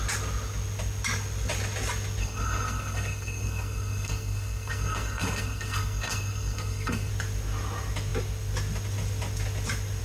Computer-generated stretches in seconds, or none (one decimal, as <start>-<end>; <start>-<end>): 2.2-7.1

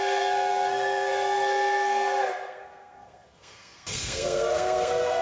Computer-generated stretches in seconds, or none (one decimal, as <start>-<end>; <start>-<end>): 0.0-5.2

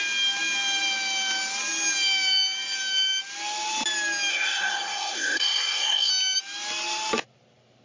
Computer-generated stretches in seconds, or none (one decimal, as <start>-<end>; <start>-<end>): 4.3-6.1

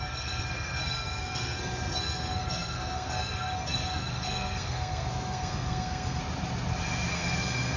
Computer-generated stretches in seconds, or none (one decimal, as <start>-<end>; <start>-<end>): 0.0-6.2; 7.1-7.8

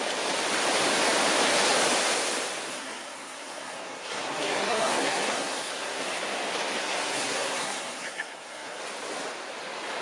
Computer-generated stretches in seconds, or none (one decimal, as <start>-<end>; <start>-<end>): 2.7-6.0; 6.8-8.8

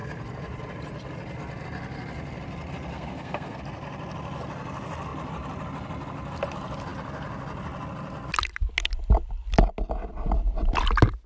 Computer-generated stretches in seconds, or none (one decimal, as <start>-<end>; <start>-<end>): 2.9-3.6

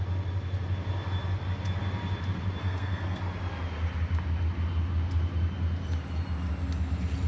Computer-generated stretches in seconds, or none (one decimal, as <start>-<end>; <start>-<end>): 2.6-3.2

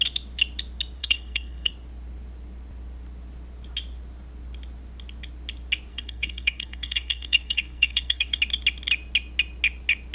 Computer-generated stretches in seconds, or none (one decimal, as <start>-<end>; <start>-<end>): 1.0-1.7; 5.9-8.4